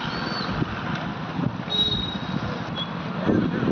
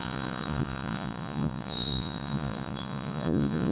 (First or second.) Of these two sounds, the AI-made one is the second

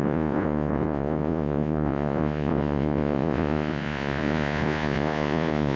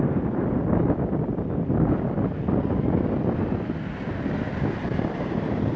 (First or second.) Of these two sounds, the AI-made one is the first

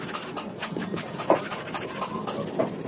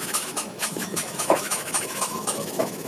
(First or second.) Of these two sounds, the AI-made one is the second